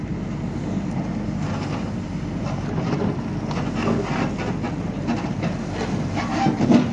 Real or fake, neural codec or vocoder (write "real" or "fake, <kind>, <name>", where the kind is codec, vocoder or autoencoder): real